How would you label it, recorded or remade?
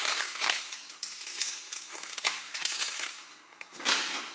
remade